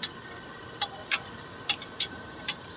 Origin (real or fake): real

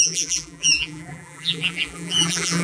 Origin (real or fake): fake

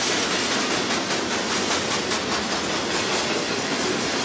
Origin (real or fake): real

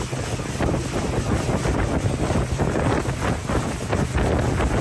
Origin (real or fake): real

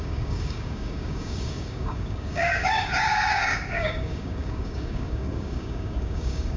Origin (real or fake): fake